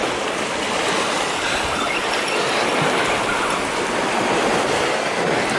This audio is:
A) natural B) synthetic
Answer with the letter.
A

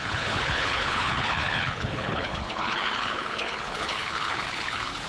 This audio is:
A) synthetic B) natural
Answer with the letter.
A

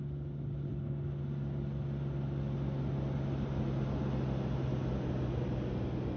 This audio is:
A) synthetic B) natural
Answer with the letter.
B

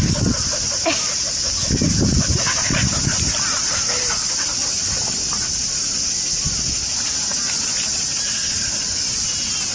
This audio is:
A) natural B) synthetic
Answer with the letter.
A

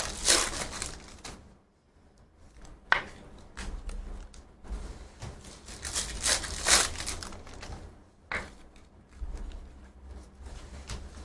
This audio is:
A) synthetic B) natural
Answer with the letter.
B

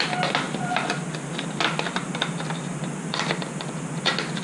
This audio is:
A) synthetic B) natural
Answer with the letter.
B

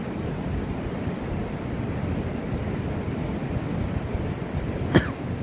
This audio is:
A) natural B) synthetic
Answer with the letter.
A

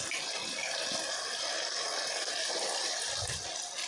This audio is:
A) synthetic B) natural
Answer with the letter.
B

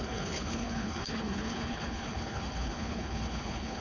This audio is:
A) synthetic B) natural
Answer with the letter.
A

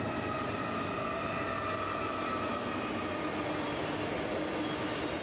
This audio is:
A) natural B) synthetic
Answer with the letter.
A